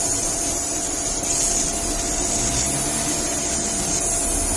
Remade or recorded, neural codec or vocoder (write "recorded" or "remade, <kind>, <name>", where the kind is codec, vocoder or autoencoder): recorded